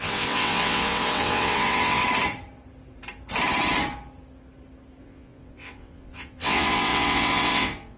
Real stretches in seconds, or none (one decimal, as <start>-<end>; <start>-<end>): 2.0-5.0